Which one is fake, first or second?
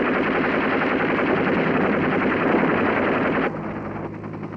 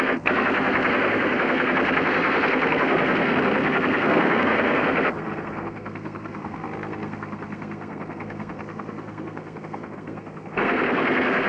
second